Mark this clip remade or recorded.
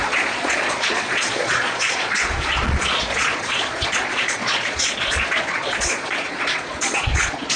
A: remade